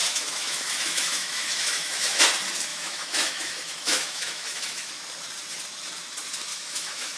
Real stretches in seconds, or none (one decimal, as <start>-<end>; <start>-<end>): 2.2-2.7; 4.9-6.5